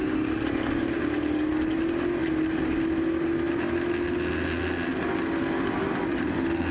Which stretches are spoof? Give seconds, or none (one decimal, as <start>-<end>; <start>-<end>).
none

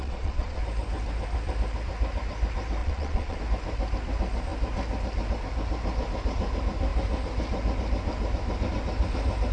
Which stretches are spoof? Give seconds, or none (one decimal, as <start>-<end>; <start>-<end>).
0.0-0.6; 2.8-3.4

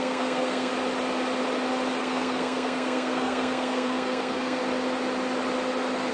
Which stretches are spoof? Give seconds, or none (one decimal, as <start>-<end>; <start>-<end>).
0.0-0.7; 2.0-4.6